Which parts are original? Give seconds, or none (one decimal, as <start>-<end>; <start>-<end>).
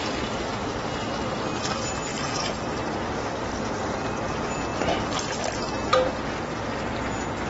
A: 0.0-7.5